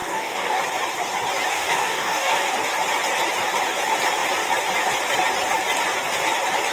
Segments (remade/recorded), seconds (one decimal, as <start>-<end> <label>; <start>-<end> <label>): 0.0-0.6 remade; 0.6-1.5 recorded; 1.5-2.5 remade; 2.5-6.7 recorded